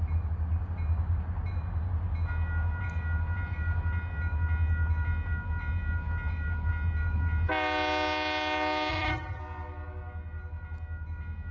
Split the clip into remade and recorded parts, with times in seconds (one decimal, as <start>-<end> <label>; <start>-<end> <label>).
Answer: 0.0-8.9 recorded; 8.9-9.4 remade; 9.4-11.5 recorded